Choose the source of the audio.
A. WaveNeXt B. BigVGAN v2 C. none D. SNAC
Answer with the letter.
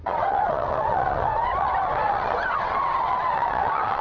A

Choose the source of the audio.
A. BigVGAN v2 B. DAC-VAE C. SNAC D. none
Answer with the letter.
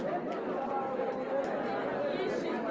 D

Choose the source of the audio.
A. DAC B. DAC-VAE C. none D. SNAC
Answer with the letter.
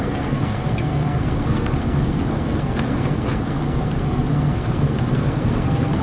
D